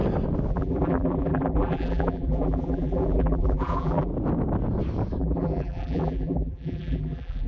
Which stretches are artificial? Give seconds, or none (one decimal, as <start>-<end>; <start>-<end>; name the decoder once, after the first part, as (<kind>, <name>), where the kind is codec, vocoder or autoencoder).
0.5-4.1 (vocoder, BigVGAN v2); 5.2-7.5